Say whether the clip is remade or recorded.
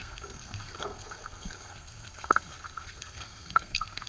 remade